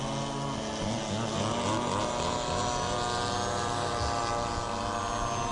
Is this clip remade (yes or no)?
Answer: no